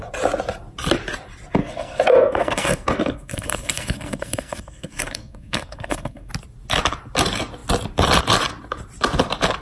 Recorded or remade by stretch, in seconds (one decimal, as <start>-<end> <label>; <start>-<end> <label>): 0.0-1.6 recorded; 1.6-6.3 remade; 6.3-9.6 recorded